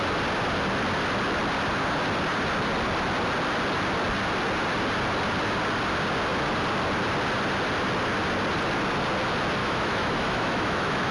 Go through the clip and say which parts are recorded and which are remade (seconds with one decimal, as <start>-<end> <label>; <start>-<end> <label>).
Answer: 0.0-9.6 recorded; 9.6-11.1 remade